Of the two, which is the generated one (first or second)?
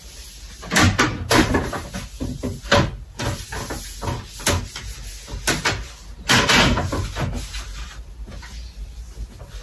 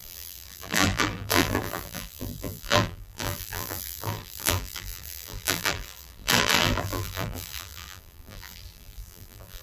second